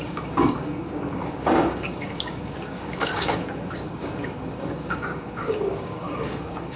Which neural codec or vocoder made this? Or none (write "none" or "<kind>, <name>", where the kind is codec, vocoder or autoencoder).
codec, DAC